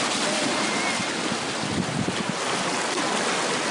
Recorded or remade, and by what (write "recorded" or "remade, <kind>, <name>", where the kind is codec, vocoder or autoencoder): recorded